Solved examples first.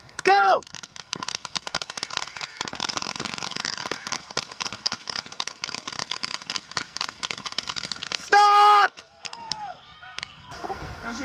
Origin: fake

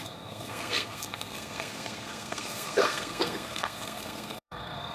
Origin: fake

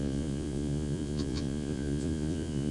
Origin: fake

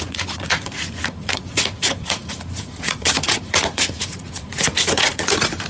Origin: fake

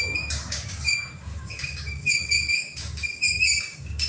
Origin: fake